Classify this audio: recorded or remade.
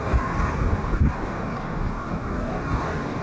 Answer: remade